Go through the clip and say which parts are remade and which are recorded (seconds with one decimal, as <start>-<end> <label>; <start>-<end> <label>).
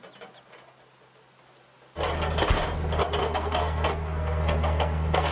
0.0-3.2 recorded; 3.2-5.3 remade